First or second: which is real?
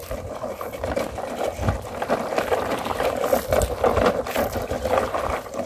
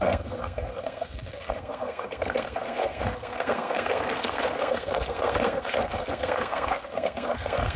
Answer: first